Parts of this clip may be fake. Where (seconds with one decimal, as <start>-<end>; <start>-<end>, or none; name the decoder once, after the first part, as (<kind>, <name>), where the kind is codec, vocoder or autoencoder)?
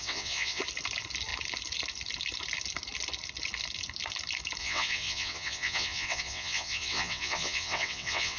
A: 0.0-0.6 (vocoder, WaveNeXt); 4.6-8.4